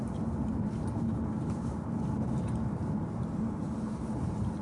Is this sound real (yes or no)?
no